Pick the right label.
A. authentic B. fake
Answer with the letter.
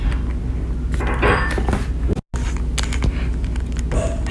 A